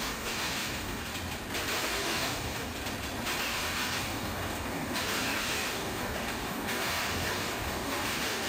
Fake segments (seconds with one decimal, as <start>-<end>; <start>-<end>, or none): 0.0-1.1; 1.8-2.7; 3.4-8.5